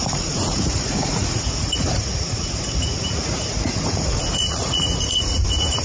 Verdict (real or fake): fake